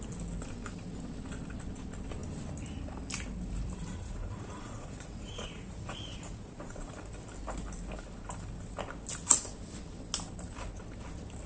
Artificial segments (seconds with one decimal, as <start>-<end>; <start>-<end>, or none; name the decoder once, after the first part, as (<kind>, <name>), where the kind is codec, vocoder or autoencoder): 3.9-6.9 (vocoder, Vocos)